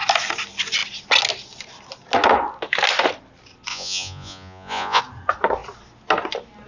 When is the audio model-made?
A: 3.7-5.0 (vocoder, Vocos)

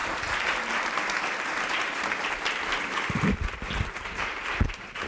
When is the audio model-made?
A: none

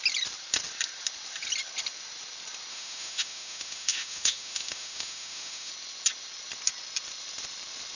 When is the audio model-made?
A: 2.7-5.7 (autoencoder, DAC-VAE)

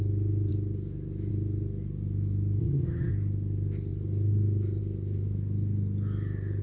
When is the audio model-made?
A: 2.6-3.1 (vocoder, HiFi-GAN)

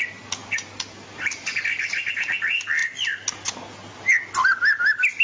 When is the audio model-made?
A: 0.4-2.1 (vocoder, BigVGAN v2)

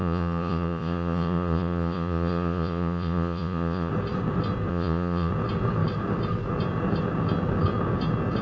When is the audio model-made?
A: 0.0-3.9 (vocoder, Vocos); 4.7-5.3

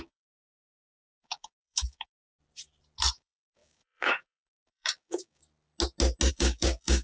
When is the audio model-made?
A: 0.0-2.4 (codec, DAC); 3.1-5.4; 6.3-7.0